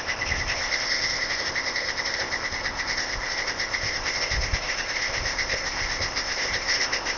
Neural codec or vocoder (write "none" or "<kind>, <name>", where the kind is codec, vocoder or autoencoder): codec, ZipCodec